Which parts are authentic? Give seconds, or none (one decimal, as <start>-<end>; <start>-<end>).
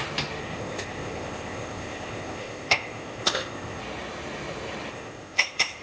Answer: 0.0-0.4; 3.8-4.9